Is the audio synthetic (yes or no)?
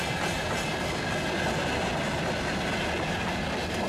no